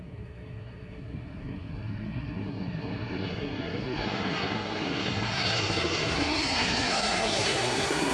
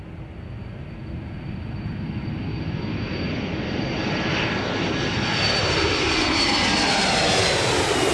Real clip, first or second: second